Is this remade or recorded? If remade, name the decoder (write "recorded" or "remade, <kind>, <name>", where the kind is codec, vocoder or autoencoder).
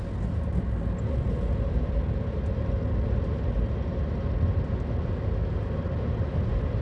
recorded